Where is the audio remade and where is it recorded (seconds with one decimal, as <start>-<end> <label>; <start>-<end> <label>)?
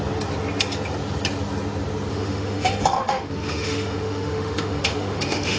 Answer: 0.0-2.1 recorded; 2.1-5.6 remade